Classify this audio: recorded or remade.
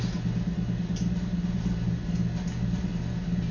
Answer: recorded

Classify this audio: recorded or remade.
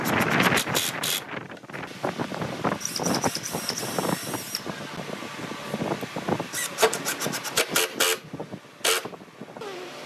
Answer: recorded